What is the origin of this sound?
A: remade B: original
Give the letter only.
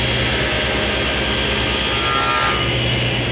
B